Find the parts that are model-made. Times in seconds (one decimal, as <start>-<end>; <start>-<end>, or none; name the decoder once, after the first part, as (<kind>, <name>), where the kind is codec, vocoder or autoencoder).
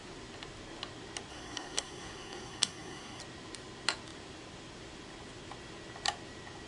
1.3-3.2 (codec, SNAC)